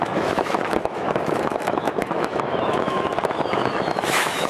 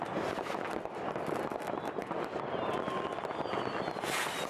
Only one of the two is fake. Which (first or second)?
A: first